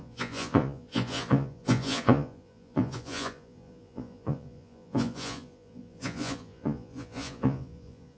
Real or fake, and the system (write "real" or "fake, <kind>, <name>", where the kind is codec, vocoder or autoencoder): fake, vocoder, Vocos